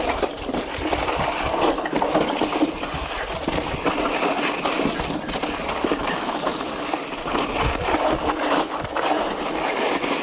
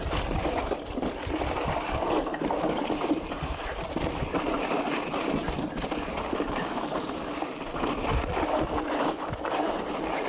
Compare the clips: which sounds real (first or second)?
first